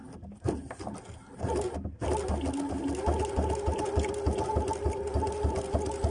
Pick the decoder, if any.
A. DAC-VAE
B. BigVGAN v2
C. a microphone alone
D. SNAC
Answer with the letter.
C